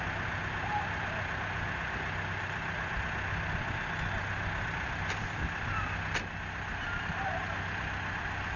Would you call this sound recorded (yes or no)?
yes